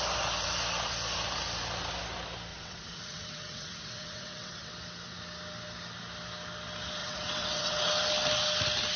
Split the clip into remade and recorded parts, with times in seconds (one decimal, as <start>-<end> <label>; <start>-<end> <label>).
0.0-2.5 recorded; 2.5-4.7 remade; 4.7-7.0 recorded; 7.0-7.9 remade; 7.9-9.0 recorded